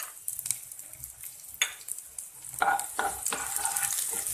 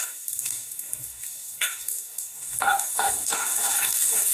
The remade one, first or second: second